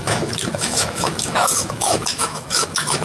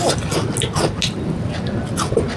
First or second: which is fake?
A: first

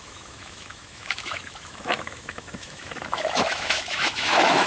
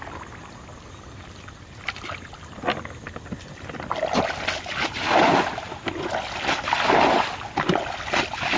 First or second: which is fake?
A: first